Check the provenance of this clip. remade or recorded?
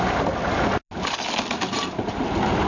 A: recorded